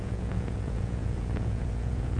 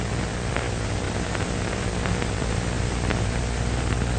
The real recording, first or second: second